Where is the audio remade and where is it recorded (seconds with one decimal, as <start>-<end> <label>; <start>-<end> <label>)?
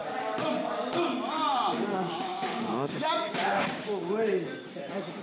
0.0-1.9 recorded; 1.9-4.1 remade; 4.1-5.2 recorded